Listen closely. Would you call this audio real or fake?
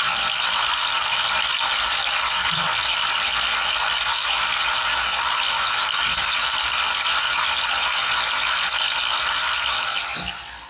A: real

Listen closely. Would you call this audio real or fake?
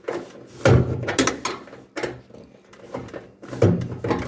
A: real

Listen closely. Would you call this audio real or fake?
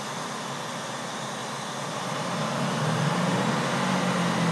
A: real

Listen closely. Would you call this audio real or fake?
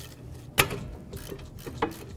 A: real